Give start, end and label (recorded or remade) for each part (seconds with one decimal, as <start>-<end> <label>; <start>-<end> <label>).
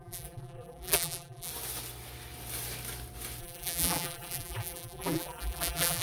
0.0-1.5 remade; 1.5-3.4 recorded; 3.4-6.0 remade